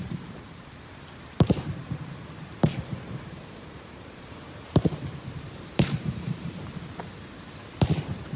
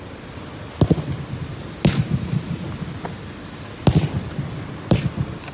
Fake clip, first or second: first